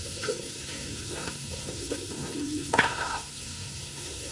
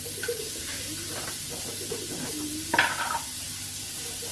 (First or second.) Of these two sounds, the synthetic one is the first